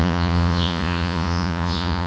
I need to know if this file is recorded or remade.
remade